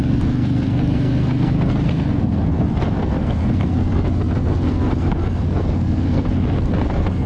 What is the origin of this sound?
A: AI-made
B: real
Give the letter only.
A